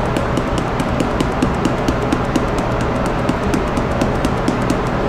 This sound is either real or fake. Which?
real